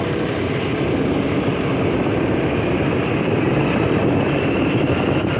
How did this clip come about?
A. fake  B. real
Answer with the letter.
B